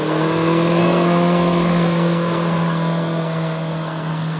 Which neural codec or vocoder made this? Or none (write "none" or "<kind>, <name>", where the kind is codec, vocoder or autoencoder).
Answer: codec, SNAC